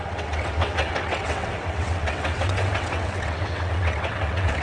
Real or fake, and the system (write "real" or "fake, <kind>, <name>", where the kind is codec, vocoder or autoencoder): fake, vocoder, WaveNeXt